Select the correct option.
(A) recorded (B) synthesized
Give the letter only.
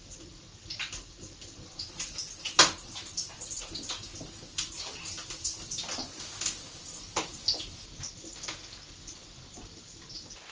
A